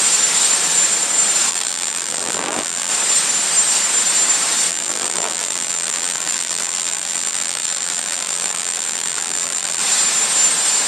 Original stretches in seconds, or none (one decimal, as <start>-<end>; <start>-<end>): 0.0-1.5; 2.9-4.7; 9.8-10.9